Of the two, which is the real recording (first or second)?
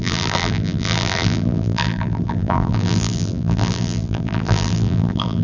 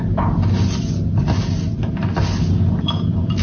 second